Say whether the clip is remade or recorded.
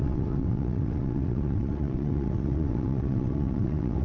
remade